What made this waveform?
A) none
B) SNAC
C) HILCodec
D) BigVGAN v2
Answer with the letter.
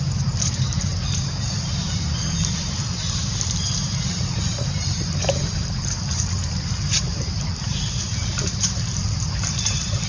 D